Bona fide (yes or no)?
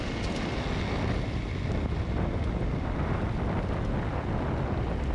yes